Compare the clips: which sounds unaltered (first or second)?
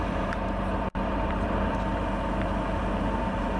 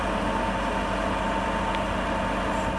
second